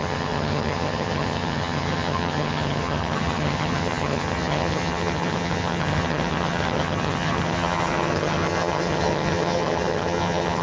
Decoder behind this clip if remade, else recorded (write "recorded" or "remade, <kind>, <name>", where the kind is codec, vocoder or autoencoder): remade, vocoder, HiFi-GAN